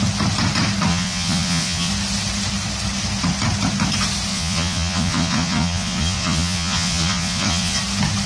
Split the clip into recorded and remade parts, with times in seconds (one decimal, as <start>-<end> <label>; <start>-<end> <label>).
0.0-0.9 recorded; 0.9-1.9 remade; 1.9-4.3 recorded; 4.3-7.8 remade; 7.8-8.3 recorded